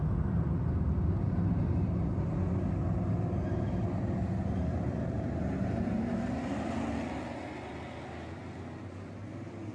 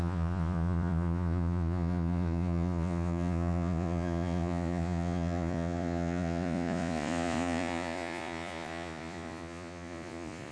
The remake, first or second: second